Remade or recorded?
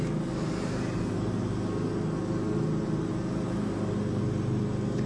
recorded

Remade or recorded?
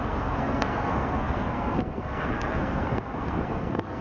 remade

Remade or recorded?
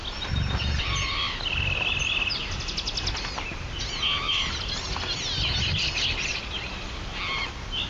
recorded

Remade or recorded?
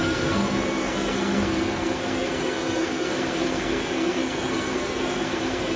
remade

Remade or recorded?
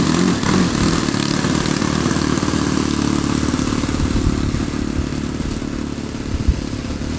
recorded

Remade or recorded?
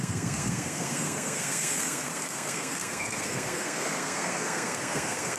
remade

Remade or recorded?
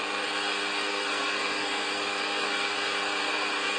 remade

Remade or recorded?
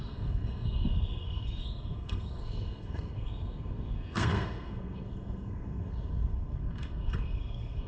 remade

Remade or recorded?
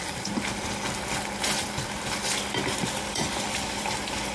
recorded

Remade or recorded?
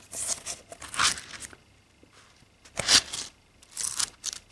recorded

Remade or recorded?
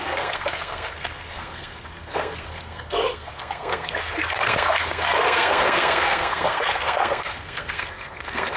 remade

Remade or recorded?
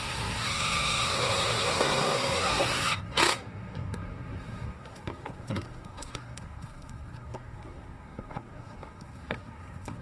remade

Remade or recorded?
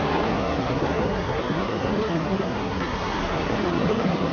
remade